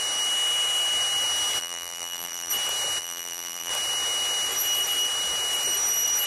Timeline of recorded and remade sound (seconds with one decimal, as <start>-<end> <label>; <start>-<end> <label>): 0.0-1.6 recorded; 1.6-2.5 remade; 2.5-3.0 recorded; 3.0-3.7 remade; 3.7-6.3 recorded